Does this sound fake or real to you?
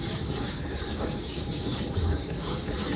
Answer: fake